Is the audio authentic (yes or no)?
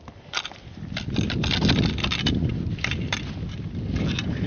yes